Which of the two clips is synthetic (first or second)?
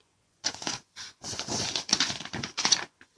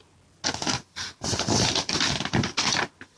first